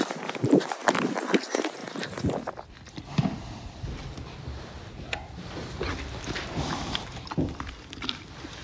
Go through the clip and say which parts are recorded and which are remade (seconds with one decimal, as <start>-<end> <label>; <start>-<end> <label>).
0.0-1.8 remade; 1.8-2.7 recorded; 2.7-8.6 remade